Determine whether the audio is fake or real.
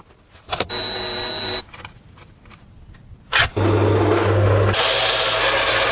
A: real